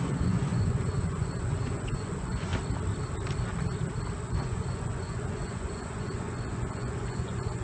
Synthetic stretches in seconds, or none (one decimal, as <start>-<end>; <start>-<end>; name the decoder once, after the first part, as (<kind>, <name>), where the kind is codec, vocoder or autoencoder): 0.0-2.5 (vocoder, Vocos); 4.2-7.6